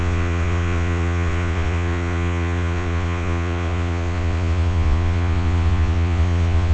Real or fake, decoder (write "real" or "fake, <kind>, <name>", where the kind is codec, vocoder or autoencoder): fake, vocoder, Vocos